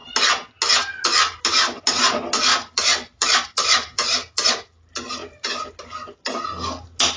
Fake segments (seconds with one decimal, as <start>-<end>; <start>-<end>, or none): 2.5-4.5; 5.2-5.7